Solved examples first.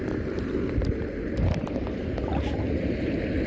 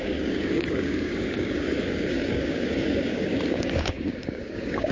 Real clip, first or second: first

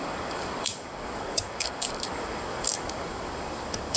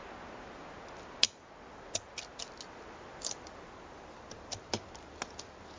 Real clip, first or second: second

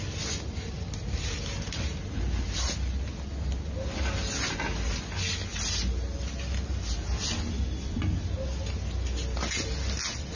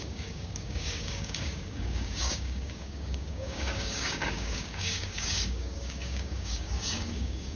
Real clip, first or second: first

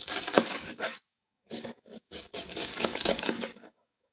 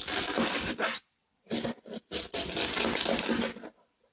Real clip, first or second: second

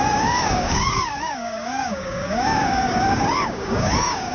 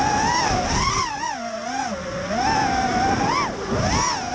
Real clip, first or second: second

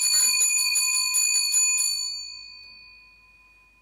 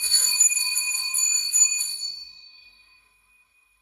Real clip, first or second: first